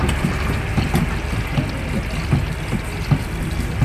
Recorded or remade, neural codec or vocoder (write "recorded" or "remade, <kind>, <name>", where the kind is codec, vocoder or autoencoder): recorded